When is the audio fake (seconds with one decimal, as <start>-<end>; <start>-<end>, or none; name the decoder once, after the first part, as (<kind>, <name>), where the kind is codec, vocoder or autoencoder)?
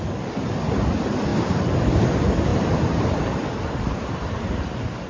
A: none